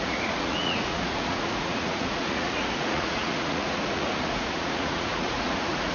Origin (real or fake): fake